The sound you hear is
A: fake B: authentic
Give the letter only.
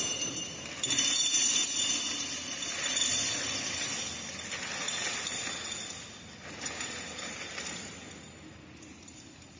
B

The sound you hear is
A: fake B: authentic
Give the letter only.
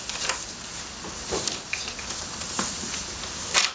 B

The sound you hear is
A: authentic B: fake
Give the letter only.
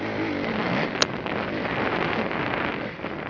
A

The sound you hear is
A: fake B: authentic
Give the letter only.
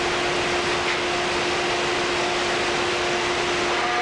B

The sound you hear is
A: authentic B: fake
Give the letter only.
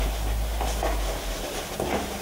A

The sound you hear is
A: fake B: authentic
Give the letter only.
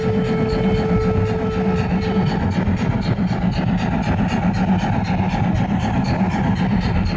B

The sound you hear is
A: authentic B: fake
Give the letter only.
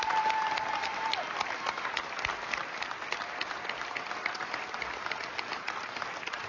A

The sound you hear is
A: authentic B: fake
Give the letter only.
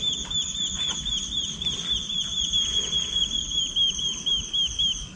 A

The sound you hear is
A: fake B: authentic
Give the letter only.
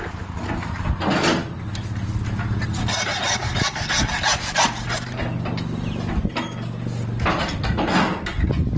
B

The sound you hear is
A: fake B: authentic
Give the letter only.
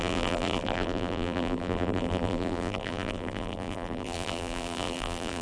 A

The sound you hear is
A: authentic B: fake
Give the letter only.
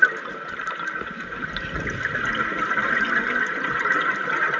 A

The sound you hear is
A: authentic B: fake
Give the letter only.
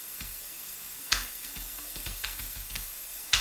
B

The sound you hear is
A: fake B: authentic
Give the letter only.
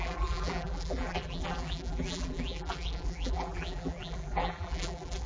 A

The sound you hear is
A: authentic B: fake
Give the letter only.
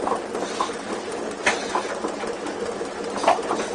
A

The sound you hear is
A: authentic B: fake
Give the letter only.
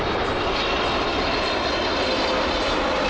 A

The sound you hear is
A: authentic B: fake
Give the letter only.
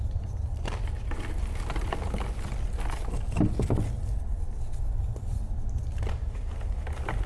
A